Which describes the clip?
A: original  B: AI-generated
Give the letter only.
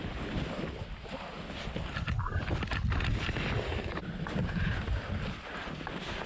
A